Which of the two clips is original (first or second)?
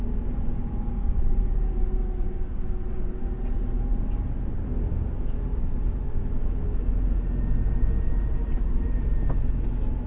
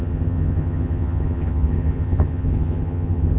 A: first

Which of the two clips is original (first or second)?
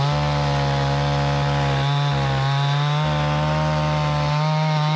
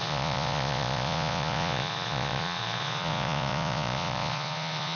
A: first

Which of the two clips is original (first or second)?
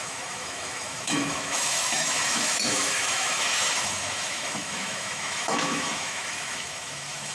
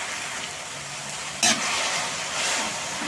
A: second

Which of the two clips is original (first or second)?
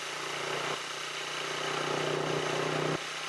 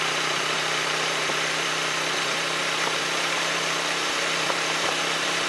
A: first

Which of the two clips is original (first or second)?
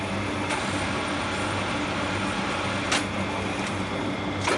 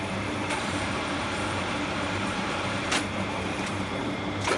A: first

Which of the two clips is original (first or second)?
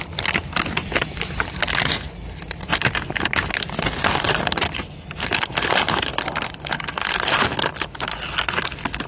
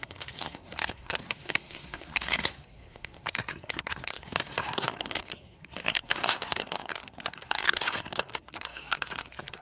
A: first